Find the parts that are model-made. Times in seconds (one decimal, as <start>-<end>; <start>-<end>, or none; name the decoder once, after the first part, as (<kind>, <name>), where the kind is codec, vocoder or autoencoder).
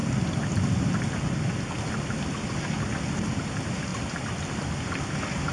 none